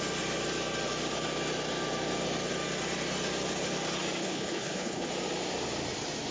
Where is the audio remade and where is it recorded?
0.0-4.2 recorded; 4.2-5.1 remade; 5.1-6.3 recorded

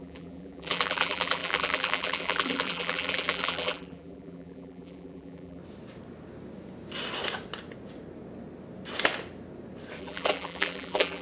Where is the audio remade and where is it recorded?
0.0-5.6 remade; 5.6-10.0 recorded; 10.0-11.2 remade

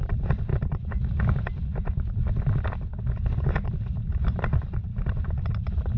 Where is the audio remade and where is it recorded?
0.0-0.5 remade; 0.5-2.7 recorded; 2.7-6.0 remade

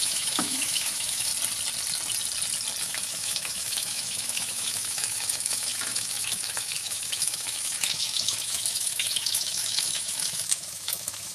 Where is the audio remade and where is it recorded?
0.0-1.3 remade; 1.3-2.8 recorded; 2.8-11.3 remade